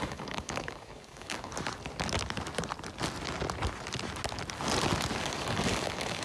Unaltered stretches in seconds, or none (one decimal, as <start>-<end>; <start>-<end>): 1.5-5.2